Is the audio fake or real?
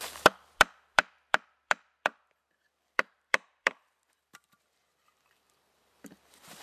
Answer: fake